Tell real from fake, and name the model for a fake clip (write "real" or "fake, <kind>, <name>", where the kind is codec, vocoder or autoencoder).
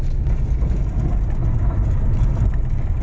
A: real